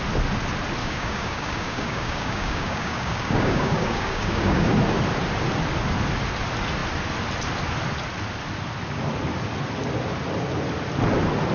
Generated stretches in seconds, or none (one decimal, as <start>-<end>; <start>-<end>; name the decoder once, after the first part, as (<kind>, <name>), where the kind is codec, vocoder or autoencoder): 0.8-4.7 (codec, DAC)